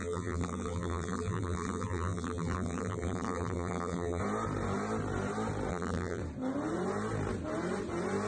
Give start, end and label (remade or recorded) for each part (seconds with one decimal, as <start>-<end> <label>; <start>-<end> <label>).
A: 0.0-4.2 remade; 4.2-5.7 recorded; 5.7-6.2 remade; 6.2-8.3 recorded